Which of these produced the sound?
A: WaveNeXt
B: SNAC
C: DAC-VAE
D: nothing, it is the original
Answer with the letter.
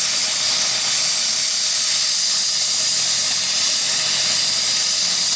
D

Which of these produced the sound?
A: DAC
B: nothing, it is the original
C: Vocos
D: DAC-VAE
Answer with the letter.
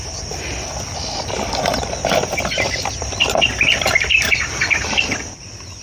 B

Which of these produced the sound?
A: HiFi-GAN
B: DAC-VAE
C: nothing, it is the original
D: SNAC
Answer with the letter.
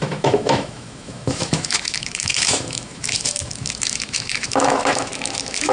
B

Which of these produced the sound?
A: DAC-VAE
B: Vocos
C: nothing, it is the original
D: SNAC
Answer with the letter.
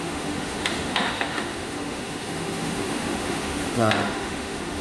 A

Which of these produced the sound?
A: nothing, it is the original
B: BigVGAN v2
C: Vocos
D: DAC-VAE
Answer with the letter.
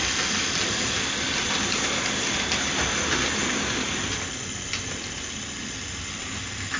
A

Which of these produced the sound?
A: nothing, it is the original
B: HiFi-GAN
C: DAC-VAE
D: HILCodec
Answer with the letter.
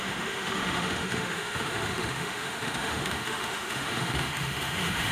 C